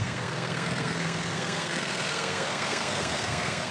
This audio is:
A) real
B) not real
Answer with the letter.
B